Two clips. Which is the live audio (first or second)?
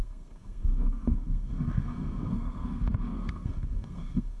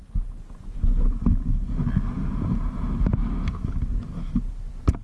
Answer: second